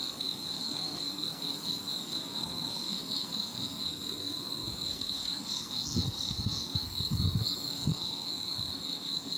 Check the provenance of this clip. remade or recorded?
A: remade